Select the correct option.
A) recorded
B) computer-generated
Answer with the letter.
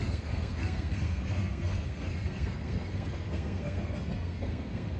B